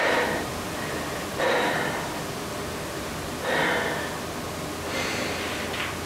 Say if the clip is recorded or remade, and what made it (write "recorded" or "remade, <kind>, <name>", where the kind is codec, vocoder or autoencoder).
recorded